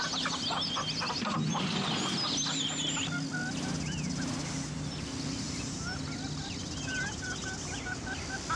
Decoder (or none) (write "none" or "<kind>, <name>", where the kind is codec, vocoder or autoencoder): none